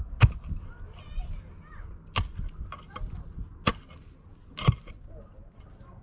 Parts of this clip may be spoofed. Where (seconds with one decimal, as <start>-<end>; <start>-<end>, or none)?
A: none